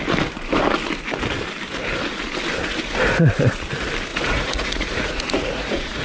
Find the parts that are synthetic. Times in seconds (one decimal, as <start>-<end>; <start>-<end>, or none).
4.1-6.0